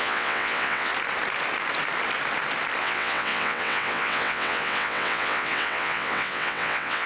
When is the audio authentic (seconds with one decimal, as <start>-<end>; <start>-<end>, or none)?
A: 0.9-2.8